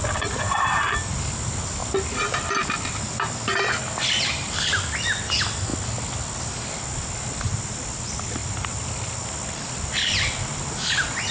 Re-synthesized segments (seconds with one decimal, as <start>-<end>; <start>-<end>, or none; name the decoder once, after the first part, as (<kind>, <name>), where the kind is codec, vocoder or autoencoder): 8.4-9.1 (vocoder, BigVGAN v2)